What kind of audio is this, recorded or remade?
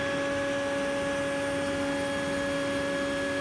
recorded